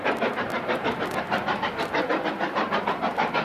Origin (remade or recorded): recorded